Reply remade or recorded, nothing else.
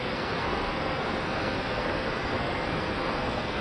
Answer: remade